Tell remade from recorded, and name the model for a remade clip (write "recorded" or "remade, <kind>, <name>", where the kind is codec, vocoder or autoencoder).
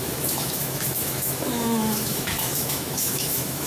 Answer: remade, autoencoder, DAC-VAE